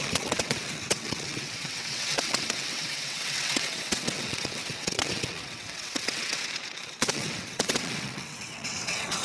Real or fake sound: fake